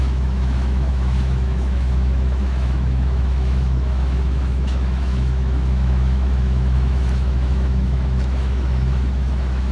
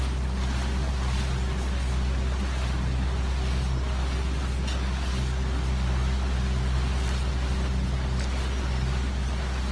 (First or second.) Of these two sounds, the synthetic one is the first